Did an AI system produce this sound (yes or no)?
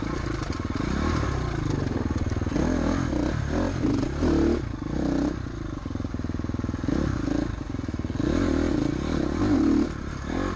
no